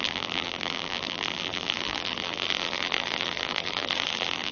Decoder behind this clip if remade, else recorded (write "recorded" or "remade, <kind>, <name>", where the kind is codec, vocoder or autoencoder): remade, vocoder, BigVGAN v2